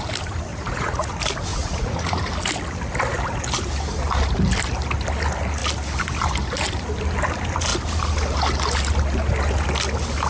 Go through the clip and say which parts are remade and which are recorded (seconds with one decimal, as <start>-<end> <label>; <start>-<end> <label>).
0.0-0.5 recorded; 0.5-1.1 remade; 1.1-1.5 recorded; 1.5-2.2 remade; 2.2-10.3 recorded